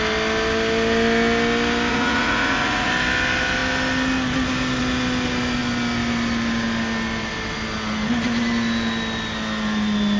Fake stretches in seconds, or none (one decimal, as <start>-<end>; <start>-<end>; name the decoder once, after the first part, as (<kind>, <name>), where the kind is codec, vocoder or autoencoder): 1.9-2.9 (vocoder, Vocos)